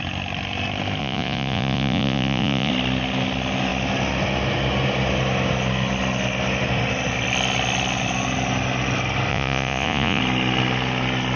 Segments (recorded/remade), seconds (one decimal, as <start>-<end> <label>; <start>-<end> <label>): 0.0-1.0 recorded; 1.0-2.7 remade; 2.7-9.3 recorded; 9.3-10.2 remade; 10.2-11.4 recorded